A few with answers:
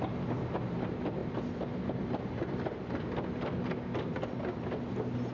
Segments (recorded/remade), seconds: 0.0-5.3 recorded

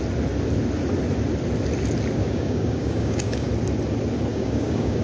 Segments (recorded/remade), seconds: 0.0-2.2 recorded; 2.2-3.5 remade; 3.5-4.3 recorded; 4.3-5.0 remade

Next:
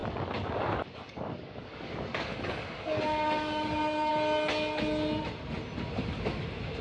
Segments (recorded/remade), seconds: 0.0-4.1 remade; 4.1-6.8 recorded